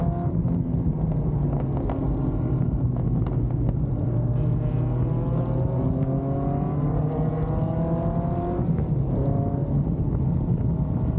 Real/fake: real